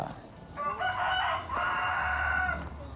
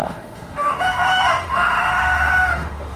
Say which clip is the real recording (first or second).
first